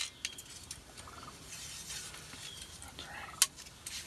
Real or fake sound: real